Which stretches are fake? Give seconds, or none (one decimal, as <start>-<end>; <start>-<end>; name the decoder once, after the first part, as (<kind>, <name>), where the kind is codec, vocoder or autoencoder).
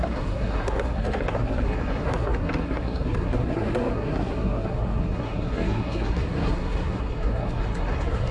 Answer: 0.0-8.3 (codec, SNAC)